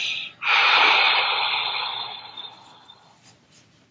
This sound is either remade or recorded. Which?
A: recorded